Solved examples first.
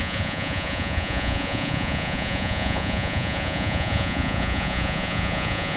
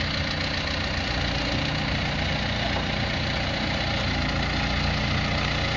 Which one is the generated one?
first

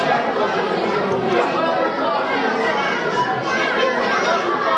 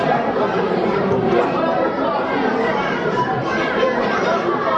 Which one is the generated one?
second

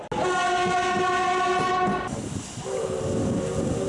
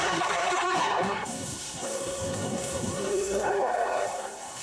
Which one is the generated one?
second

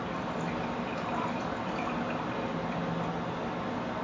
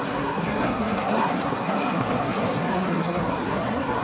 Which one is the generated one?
second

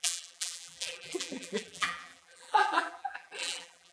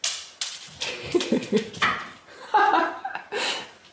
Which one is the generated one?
first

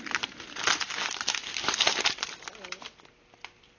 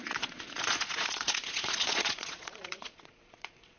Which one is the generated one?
second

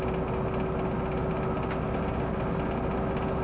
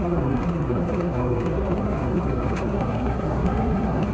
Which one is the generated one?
second